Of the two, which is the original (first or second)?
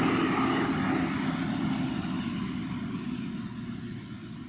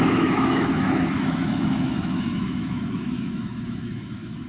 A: first